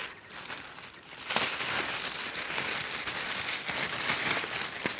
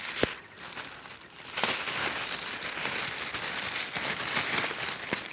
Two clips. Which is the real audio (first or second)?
second